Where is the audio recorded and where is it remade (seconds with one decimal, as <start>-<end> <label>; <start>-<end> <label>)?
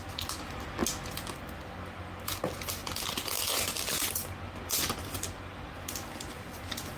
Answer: 0.0-7.0 recorded